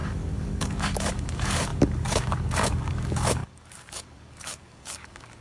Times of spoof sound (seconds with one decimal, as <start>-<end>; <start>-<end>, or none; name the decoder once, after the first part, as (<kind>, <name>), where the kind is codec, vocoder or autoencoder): 0.0-5.4 (codec, DAC)